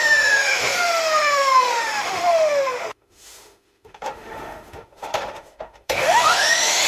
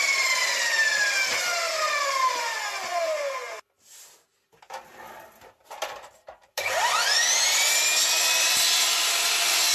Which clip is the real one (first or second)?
second